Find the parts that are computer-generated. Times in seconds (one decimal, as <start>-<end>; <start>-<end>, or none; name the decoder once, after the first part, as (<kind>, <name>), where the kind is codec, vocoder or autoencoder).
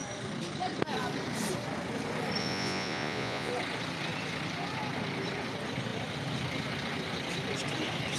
2.4-3.5 (vocoder, Vocos)